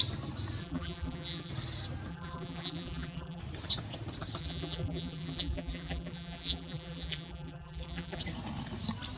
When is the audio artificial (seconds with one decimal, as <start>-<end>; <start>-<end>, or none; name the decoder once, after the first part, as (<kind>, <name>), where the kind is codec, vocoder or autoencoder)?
0.6-1.5 (vocoder, BigVGAN v2); 2.1-3.4; 4.4-8.2